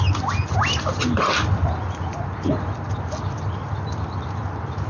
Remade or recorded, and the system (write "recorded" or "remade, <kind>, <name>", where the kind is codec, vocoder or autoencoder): recorded